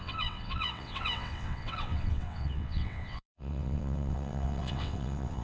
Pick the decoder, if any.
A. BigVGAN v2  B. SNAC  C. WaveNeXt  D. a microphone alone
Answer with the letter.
C